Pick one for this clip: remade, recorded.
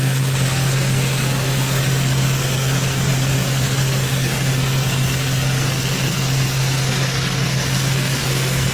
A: remade